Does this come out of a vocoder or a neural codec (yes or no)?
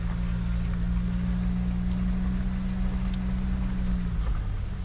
no